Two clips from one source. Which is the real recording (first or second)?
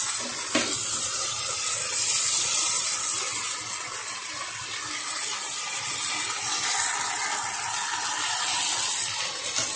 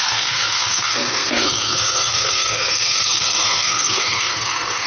first